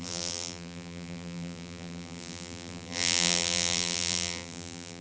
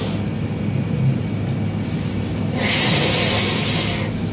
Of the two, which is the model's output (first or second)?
first